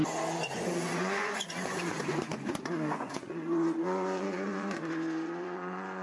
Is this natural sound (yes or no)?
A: no